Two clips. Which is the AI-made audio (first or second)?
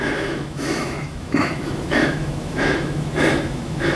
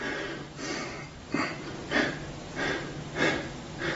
first